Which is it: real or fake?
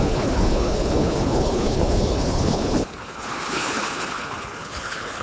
fake